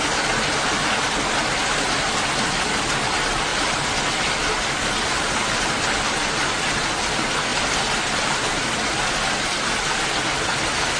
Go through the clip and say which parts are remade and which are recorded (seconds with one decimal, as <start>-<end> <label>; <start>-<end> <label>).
0.0-11.0 recorded